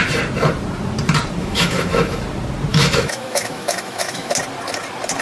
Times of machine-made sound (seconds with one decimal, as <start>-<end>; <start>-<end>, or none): 1.4-2.2; 2.7-4.3